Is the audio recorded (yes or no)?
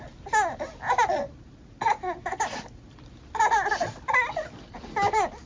yes